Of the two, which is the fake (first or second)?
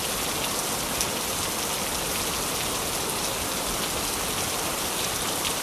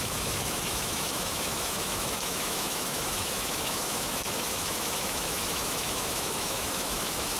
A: second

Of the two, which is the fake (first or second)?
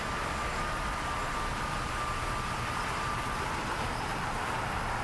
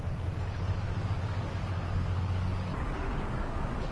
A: second